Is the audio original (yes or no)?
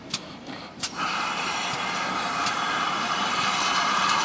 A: no